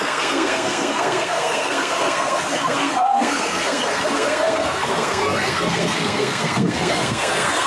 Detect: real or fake fake